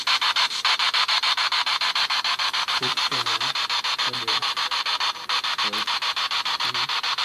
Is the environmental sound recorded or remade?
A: recorded